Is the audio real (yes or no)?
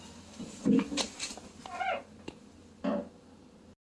yes